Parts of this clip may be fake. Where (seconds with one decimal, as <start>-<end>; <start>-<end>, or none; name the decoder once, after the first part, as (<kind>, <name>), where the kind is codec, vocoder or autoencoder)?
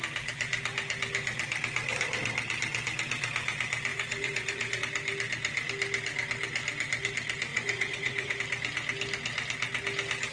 3.9-4.8 (vocoder, Vocos); 7.5-8.4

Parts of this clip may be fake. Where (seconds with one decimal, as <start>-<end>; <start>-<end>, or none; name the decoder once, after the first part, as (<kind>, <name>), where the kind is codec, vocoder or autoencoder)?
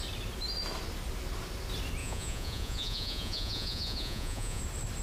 2.0-4.6 (vocoder, Vocos)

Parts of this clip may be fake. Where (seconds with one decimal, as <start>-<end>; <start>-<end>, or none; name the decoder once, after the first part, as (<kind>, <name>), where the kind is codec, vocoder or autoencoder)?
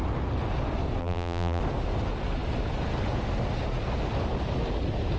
1.0-1.6 (vocoder, BigVGAN v2)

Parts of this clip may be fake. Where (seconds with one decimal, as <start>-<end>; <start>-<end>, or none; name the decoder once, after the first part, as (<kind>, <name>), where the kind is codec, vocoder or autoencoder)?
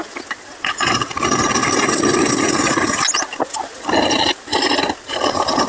0.5-1.1 (vocoder, WaveNeXt)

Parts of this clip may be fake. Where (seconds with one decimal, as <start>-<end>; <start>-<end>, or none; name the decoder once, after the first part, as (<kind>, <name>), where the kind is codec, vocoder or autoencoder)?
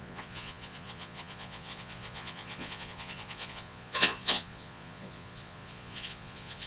0.0-6.7 (vocoder, Vocos)